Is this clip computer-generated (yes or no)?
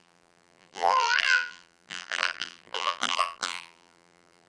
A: yes